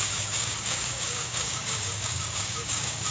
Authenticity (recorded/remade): remade